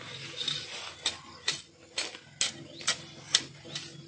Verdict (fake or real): real